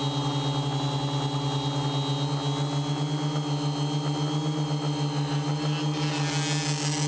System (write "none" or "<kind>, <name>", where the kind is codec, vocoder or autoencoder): none